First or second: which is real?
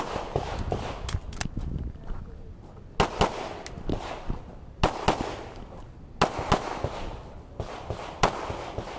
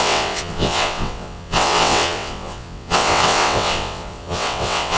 first